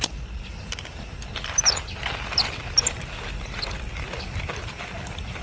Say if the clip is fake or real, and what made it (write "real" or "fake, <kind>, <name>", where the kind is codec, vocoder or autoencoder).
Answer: real